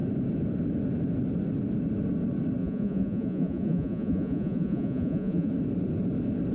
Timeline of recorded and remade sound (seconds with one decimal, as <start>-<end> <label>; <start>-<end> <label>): 0.0-2.6 recorded; 2.6-5.5 remade; 5.5-6.5 recorded